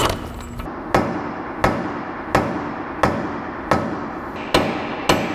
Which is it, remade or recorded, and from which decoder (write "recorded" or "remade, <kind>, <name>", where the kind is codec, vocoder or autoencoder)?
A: recorded